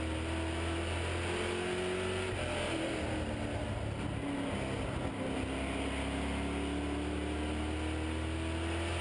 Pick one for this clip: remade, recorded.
recorded